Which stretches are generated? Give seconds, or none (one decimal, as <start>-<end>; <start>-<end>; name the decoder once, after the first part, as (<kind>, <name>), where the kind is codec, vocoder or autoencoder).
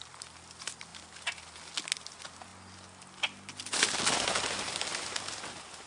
none